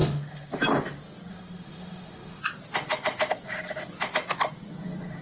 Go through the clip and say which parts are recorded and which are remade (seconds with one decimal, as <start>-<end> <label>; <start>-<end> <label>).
0.0-0.5 remade; 0.5-1.3 recorded; 1.3-2.4 remade; 2.4-5.2 recorded